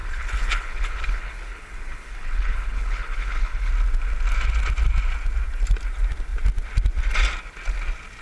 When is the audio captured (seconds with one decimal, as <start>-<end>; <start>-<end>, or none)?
3.7-8.2